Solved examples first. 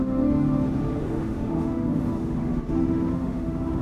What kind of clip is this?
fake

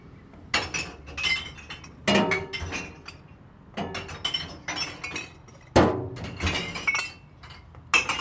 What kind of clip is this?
real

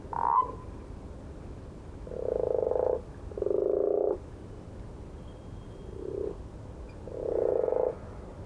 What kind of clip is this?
real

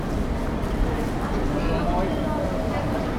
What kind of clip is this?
real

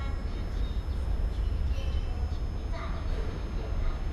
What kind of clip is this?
real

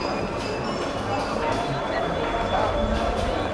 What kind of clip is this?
real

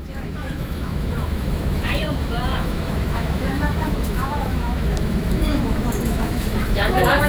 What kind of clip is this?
fake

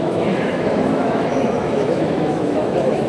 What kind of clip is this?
fake